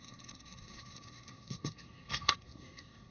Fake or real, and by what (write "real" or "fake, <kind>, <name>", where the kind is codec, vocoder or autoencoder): fake, codec, SNAC